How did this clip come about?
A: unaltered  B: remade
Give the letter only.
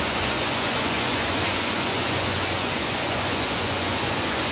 B